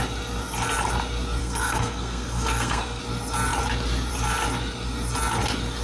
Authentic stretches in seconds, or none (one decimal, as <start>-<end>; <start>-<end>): 0.0-1.4; 3.0-5.8